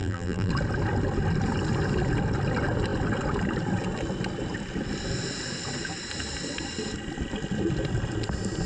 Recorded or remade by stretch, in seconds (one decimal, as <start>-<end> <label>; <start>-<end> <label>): 0.0-0.5 remade; 0.5-8.7 recorded